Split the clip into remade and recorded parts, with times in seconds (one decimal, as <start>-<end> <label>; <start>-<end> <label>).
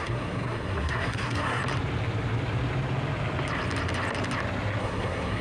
0.0-1.6 remade; 1.6-4.8 recorded; 4.8-5.4 remade